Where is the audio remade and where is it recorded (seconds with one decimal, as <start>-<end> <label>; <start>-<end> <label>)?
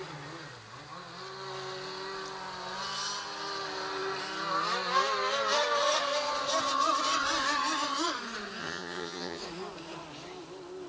0.0-8.6 recorded; 8.6-9.4 remade; 9.4-10.9 recorded